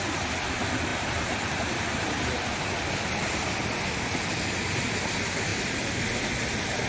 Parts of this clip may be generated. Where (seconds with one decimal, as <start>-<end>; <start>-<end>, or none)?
0.9-2.4; 5.5-6.0